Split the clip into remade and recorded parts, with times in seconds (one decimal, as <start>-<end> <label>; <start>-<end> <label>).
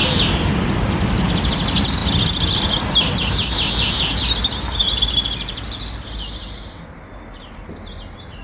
0.0-8.4 recorded